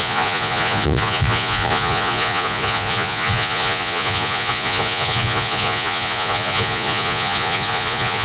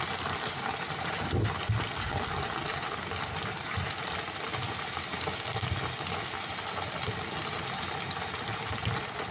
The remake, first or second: first